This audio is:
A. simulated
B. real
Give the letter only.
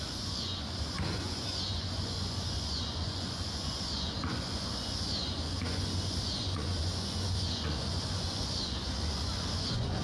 A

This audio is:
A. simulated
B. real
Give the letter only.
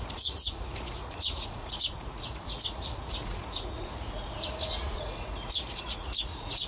A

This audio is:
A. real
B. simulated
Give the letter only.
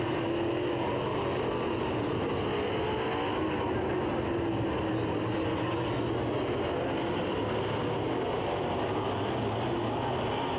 A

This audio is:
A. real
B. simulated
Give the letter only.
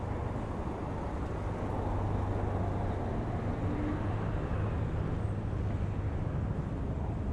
A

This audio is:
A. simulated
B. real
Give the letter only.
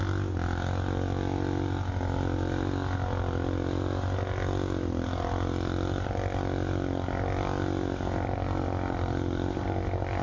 B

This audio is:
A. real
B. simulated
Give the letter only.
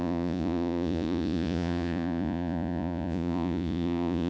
B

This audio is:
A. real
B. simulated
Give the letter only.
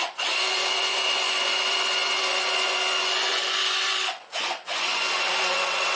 B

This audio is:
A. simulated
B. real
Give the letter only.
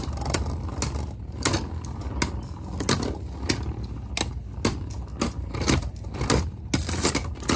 B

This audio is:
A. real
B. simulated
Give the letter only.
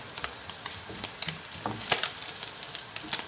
A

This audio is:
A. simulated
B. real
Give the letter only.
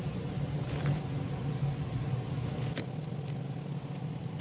B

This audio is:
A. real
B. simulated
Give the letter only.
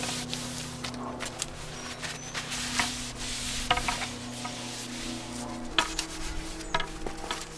A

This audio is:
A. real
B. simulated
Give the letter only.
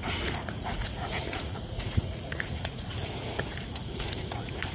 B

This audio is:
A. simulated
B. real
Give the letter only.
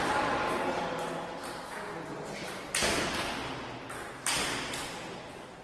B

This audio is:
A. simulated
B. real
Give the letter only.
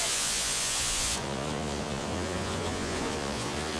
A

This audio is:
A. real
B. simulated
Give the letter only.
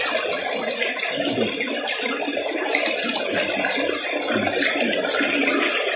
A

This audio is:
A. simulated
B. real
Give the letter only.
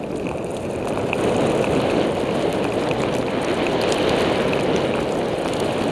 B